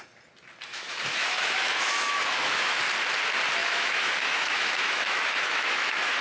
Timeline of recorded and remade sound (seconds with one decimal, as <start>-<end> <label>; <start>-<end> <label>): 0.0-0.7 recorded; 0.7-2.8 remade; 2.8-3.6 recorded; 3.6-6.2 remade